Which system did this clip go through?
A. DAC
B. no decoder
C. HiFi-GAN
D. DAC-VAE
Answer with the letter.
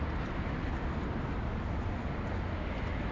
B